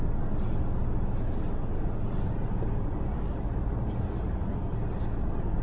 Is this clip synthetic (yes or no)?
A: no